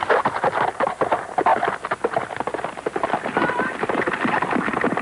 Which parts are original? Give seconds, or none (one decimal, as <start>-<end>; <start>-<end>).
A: 0.0-5.0